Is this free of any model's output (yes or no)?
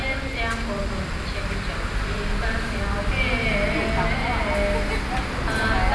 yes